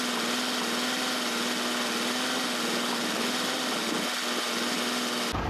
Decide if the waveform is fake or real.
real